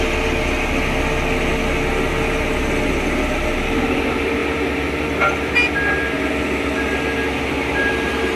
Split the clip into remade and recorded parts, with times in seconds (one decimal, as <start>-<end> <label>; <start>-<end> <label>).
0.0-8.4 recorded

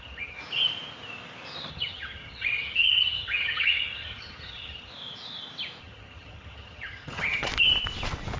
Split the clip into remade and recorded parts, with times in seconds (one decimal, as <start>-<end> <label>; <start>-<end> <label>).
0.0-0.4 remade; 0.4-1.7 recorded; 1.7-4.9 remade; 4.9-5.8 recorded; 5.8-7.5 remade; 7.5-8.4 recorded

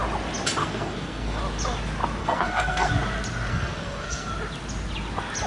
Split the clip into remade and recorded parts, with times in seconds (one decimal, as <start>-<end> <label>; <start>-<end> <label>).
0.0-0.6 recorded; 0.6-1.4 remade; 1.4-2.2 recorded; 2.2-2.9 remade; 2.9-3.5 recorded; 3.5-4.3 remade; 4.3-5.5 recorded

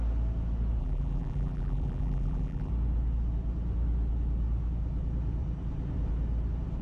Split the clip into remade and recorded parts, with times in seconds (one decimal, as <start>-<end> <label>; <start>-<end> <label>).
0.0-0.8 recorded; 0.8-2.7 remade; 2.7-6.8 recorded

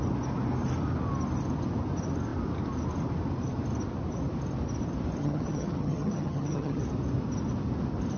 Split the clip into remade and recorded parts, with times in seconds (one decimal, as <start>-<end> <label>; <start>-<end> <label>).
0.0-5.2 recorded; 5.2-6.8 remade; 6.8-8.2 recorded

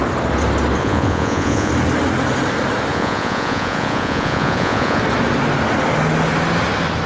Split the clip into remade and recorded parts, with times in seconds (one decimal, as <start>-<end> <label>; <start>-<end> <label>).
0.0-0.8 recorded; 0.8-1.7 remade; 1.7-2.9 recorded; 2.9-5.0 remade; 5.0-7.1 recorded

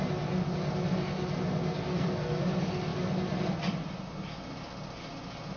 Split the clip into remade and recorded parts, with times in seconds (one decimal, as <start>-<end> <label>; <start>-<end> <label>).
0.0-1.7 recorded; 1.7-2.4 remade; 2.4-5.6 recorded